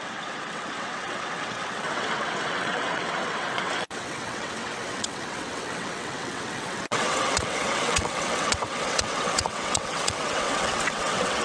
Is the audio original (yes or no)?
no